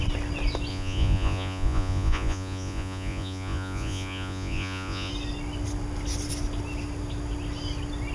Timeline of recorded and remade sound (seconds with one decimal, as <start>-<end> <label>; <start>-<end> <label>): 0.0-0.7 recorded; 0.7-5.1 remade; 5.1-8.1 recorded